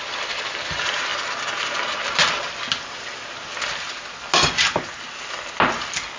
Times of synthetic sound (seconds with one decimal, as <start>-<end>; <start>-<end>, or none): none